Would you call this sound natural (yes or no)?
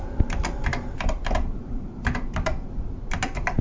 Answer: yes